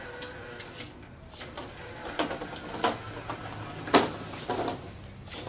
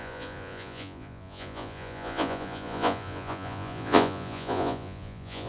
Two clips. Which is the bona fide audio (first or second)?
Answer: first